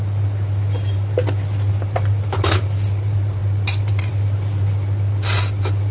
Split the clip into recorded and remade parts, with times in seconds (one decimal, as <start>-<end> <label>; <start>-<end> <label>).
0.0-5.9 recorded